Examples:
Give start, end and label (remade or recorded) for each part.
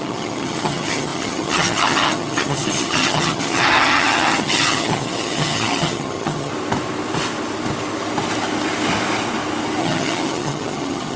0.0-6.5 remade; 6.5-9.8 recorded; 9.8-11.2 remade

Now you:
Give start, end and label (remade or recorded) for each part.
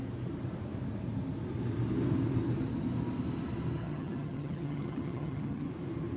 0.0-3.8 recorded; 3.8-5.7 remade; 5.7-6.2 recorded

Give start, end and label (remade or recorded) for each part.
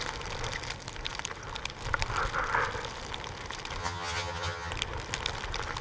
0.0-3.8 recorded; 3.8-4.7 remade; 4.7-5.8 recorded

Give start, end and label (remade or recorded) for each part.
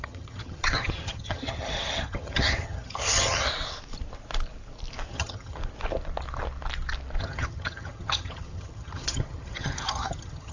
0.0-3.5 remade; 3.5-5.1 recorded; 5.1-5.6 remade; 5.6-7.2 recorded; 7.2-10.5 remade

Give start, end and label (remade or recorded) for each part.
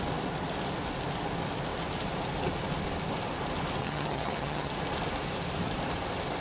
0.0-3.8 recorded; 3.8-4.7 remade; 4.7-6.4 recorded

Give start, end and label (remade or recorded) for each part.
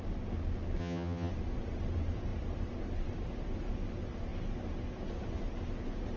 0.0-0.8 recorded; 0.8-1.3 remade; 1.3-6.2 recorded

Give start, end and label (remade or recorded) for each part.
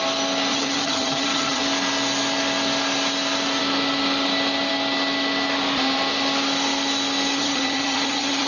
0.0-0.5 recorded; 0.5-1.6 remade; 1.6-7.3 recorded; 7.3-8.5 remade